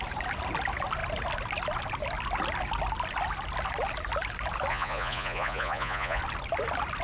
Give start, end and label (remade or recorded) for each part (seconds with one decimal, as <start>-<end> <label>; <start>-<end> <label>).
0.0-4.7 recorded; 4.7-6.2 remade; 6.2-7.0 recorded